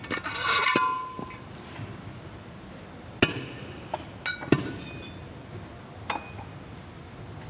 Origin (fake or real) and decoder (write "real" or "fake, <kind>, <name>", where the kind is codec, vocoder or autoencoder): real